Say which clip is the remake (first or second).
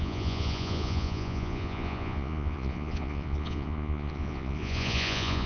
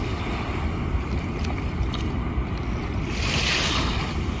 first